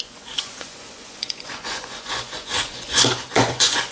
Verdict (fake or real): fake